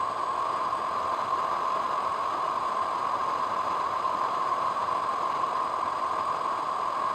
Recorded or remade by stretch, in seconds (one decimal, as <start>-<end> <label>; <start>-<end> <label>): 0.0-3.2 recorded; 3.2-4.9 remade; 4.9-7.1 recorded